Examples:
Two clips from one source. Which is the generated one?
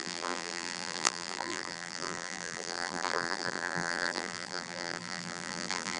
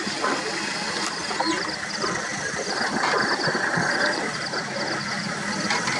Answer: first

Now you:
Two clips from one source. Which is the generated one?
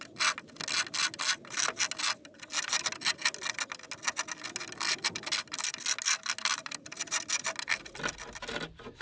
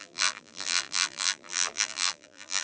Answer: second